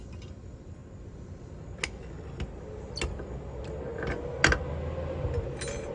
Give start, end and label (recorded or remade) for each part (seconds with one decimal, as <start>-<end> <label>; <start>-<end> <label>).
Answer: 0.0-5.9 recorded